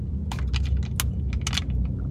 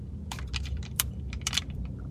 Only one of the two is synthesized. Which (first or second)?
second